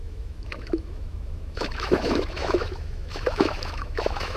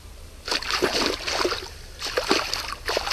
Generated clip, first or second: first